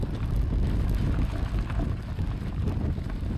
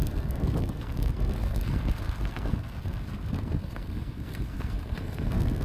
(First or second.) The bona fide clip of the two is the first